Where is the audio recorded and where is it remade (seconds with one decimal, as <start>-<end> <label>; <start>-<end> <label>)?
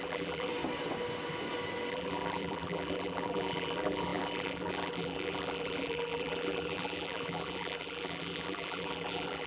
0.0-0.5 remade; 0.5-1.9 recorded; 1.9-9.5 remade